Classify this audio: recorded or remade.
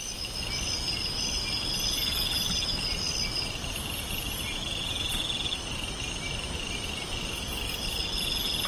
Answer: recorded